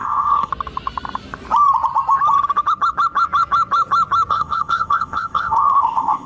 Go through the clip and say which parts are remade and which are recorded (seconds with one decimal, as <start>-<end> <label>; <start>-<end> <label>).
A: 0.0-0.5 remade; 0.5-4.3 recorded; 4.3-6.3 remade

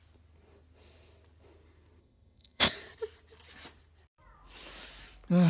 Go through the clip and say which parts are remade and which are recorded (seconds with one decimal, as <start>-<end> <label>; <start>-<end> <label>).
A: 0.0-2.0 recorded; 2.0-2.7 remade; 2.7-5.5 recorded

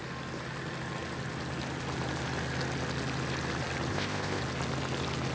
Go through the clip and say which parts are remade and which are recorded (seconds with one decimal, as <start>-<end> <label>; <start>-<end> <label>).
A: 0.0-3.9 recorded; 3.9-4.4 remade; 4.4-5.3 recorded

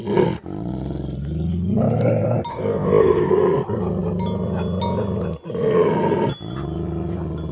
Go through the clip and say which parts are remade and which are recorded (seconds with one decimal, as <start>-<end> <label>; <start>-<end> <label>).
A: 0.0-2.5 recorded; 2.5-3.3 remade; 3.3-7.5 recorded

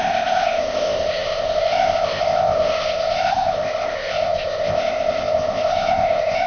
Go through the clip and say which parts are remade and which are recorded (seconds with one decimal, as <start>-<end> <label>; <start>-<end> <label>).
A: 0.0-6.5 remade